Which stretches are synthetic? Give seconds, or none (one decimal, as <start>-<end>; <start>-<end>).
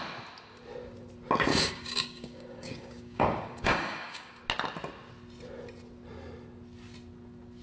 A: 1.5-4.4